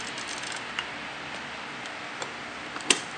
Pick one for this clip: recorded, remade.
recorded